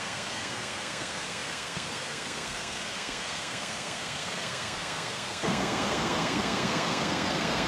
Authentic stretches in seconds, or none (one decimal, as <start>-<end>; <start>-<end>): none